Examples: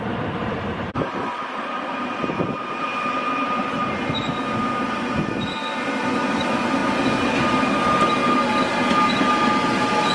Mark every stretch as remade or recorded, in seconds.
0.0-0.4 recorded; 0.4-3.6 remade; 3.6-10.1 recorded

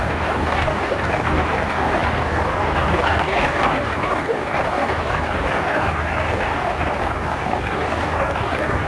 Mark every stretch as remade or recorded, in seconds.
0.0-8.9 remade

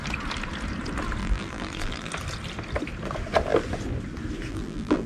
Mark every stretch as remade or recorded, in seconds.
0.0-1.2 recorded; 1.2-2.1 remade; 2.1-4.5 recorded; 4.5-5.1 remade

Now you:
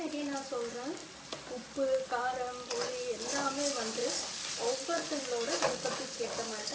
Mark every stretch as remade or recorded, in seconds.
0.0-6.7 recorded

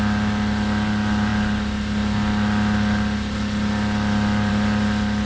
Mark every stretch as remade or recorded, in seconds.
0.0-5.3 recorded

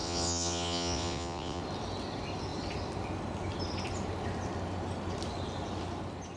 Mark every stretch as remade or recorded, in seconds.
0.0-1.6 remade; 1.6-6.4 recorded

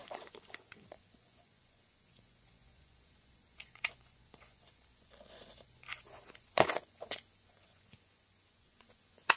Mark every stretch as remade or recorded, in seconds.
0.0-9.4 remade

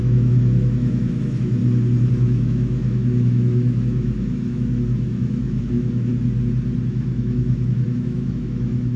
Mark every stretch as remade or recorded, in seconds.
0.0-1.6 remade; 1.6-2.1 recorded; 2.1-6.1 remade; 6.1-6.9 recorded; 6.9-9.0 remade